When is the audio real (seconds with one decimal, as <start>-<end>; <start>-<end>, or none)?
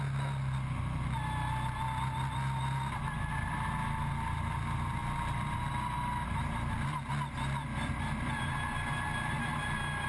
0.0-10.1